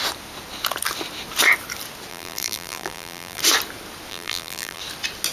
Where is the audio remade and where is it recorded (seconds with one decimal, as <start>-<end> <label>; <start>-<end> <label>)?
0.0-2.1 recorded; 2.1-3.4 remade; 3.4-4.1 recorded; 4.1-4.8 remade; 4.8-5.3 recorded